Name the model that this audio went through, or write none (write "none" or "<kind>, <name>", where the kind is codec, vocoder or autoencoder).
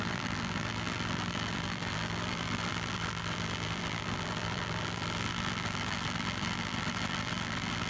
vocoder, BigVGAN v2